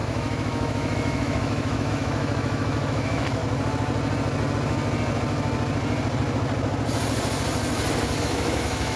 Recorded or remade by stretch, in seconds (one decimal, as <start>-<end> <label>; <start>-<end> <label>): 0.0-3.4 remade; 3.4-8.2 recorded; 8.2-9.0 remade